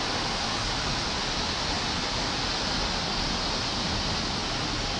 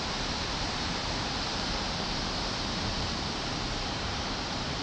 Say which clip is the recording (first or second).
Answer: first